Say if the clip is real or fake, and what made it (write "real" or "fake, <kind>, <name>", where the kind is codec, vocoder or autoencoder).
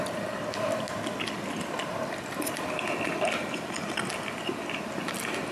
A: real